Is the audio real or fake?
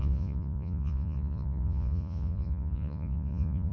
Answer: fake